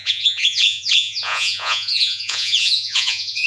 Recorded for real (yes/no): no